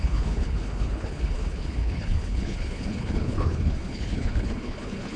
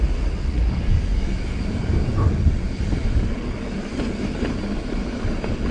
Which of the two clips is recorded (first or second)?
second